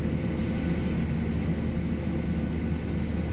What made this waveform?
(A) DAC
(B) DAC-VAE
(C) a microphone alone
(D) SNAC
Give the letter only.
C